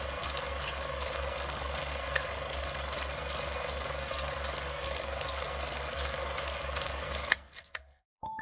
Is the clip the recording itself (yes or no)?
no